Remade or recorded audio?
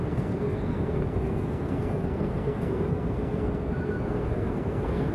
remade